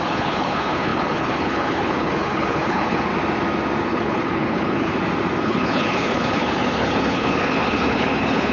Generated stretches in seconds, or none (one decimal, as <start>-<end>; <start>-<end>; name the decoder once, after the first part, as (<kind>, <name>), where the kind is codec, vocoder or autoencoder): 0.0-3.1 (codec, HILCodec); 3.8-4.9; 5.4-8.5

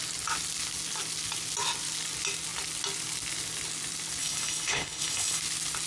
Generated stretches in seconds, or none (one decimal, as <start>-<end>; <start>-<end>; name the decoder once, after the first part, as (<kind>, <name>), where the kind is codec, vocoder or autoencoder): 4.2-5.4 (codec, HILCodec)